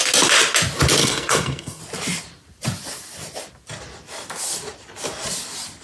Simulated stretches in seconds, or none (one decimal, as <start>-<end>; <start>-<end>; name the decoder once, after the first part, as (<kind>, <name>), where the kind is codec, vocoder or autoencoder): 1.0-1.8 (codec, SNAC)